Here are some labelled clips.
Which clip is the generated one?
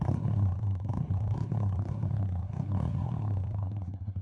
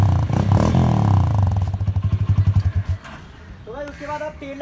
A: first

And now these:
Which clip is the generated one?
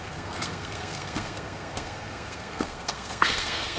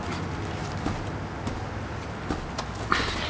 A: first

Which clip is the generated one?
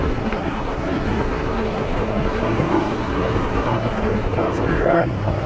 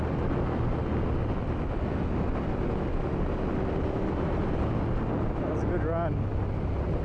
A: first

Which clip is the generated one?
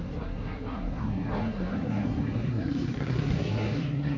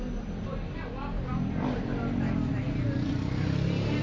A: first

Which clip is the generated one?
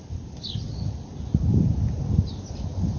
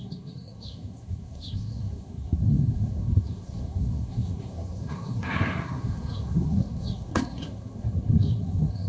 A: second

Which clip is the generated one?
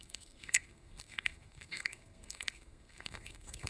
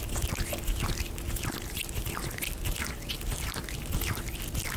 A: first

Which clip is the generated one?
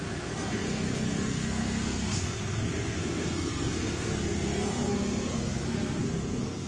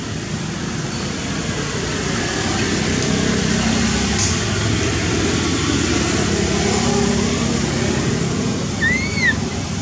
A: first